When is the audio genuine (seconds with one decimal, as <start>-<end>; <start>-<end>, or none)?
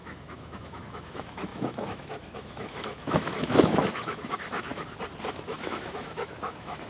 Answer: 4.7-5.3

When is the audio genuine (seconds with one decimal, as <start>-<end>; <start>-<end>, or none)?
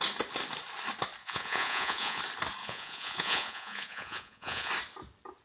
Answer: 0.0-1.2; 2.2-2.6; 4.7-5.4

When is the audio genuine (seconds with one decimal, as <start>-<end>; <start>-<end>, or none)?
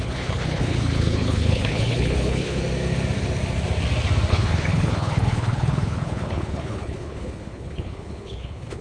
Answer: 2.6-4.3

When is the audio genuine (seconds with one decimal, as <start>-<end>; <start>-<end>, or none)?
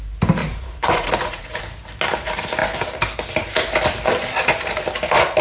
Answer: 0.0-0.4; 1.6-5.4